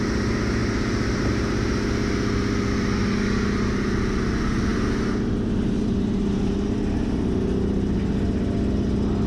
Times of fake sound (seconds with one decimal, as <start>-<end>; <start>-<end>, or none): 0.6-1.3; 4.7-6.8